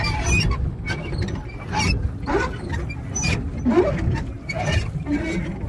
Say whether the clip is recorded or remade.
recorded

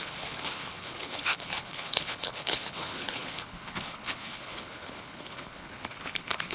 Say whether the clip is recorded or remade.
remade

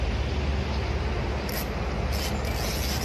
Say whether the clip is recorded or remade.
recorded